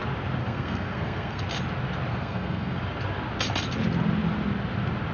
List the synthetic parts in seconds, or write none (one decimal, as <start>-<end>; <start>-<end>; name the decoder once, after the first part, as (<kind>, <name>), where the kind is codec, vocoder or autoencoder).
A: 0.4-1.4 (codec, SNAC); 2.1-2.8